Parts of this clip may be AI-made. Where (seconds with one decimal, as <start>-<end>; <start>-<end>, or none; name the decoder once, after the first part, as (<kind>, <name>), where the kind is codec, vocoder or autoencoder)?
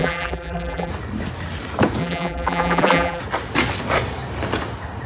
0.0-0.9 (vocoder, BigVGAN v2); 2.0-3.2